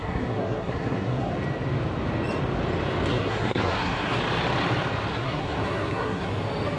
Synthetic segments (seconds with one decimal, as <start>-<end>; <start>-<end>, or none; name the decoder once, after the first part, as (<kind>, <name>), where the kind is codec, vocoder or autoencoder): 0.0-1.3 (codec, SNAC); 3.1-4.2; 5.1-6.3